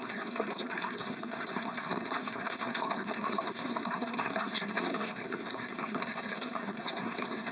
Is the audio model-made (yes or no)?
yes